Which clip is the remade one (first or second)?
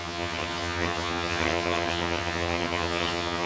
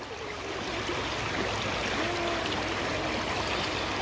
first